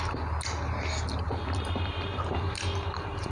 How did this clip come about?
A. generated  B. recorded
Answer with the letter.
B